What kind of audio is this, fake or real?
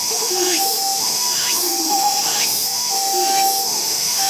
fake